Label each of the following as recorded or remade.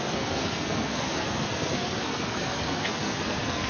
remade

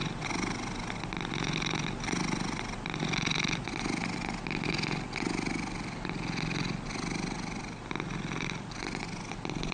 recorded